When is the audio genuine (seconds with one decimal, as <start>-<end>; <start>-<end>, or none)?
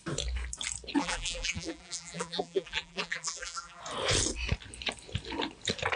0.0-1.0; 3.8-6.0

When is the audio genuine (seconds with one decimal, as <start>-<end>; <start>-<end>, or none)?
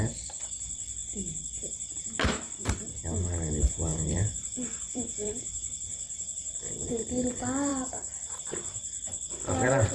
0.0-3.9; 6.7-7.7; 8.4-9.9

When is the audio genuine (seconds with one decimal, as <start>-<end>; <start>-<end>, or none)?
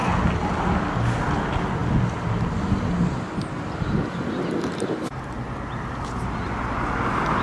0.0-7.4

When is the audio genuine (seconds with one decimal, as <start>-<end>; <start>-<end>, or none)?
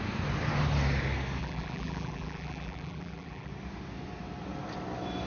0.0-1.4; 3.5-5.3